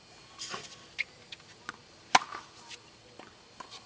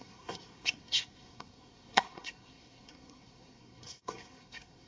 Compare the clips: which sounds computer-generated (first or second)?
second